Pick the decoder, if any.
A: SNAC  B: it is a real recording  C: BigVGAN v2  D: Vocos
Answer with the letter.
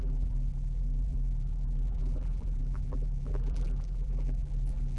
C